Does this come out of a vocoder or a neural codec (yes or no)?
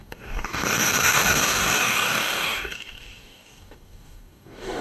yes